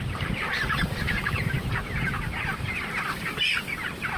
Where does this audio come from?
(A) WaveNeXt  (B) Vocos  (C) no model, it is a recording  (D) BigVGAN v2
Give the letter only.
D